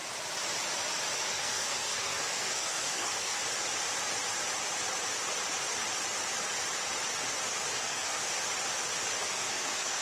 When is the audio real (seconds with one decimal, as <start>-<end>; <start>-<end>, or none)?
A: 0.0-1.3; 3.4-7.7; 8.2-9.3